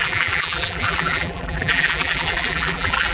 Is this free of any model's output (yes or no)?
no